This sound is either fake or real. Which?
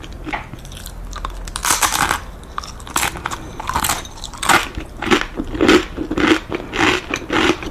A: real